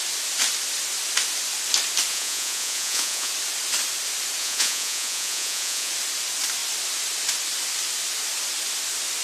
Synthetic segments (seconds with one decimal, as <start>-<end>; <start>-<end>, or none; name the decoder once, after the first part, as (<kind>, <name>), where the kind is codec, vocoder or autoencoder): 2.1-3.3 (vocoder, Vocos); 4.4-5.9